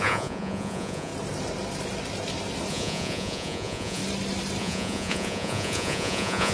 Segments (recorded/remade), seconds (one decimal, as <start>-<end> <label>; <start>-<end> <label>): 0.0-1.1 remade; 1.1-2.7 recorded; 2.7-4.0 remade; 4.0-4.6 recorded; 4.6-6.5 remade